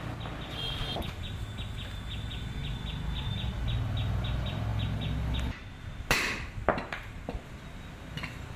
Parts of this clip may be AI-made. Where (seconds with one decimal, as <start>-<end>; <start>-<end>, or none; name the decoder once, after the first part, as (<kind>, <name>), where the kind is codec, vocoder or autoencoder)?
none